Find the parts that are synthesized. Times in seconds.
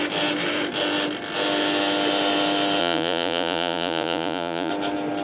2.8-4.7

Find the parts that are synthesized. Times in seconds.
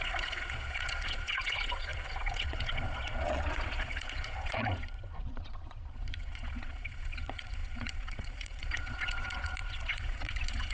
0.0-10.7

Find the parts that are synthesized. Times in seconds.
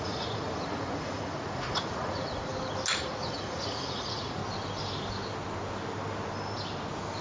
0.0-2.5; 3.0-4.4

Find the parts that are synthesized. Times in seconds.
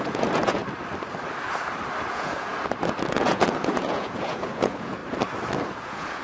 0.0-0.6; 2.1-2.5; 3.1-5.0; 5.7-6.2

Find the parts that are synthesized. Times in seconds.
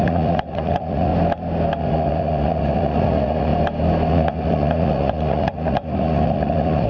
0.0-1.1; 1.8-3.5; 4.1-6.9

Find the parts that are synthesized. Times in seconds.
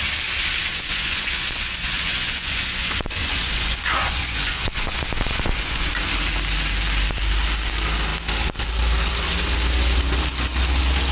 0.7-5.9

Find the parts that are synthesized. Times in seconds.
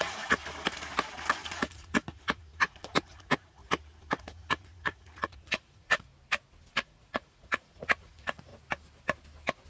0.0-0.4; 1.3-3.6; 4.2-6.1; 6.7-8.5